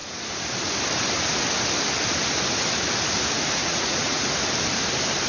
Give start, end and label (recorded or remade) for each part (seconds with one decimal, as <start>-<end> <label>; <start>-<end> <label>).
0.0-3.6 recorded; 3.6-4.2 remade; 4.2-5.3 recorded